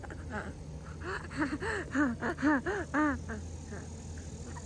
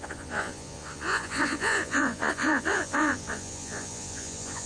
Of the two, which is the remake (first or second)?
second